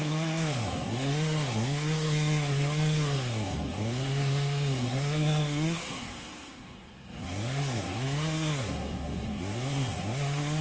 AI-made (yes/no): yes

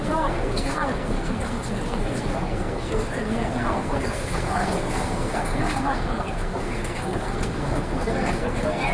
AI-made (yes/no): yes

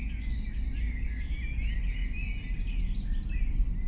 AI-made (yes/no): no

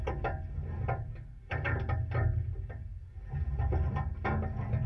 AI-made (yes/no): no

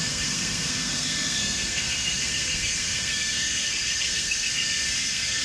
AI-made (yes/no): yes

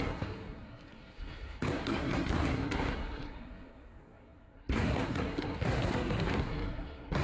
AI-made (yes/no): yes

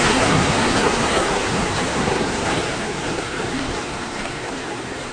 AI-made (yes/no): yes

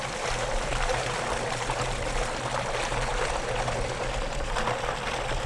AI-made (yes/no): no